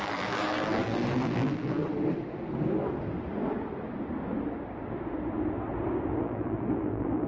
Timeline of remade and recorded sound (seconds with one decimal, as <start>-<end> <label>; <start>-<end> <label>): 0.0-1.8 remade; 1.8-6.2 recorded; 6.2-7.3 remade